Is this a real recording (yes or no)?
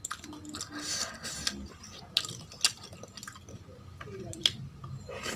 yes